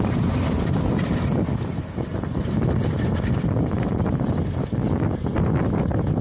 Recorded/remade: recorded